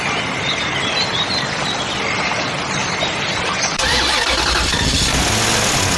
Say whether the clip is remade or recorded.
recorded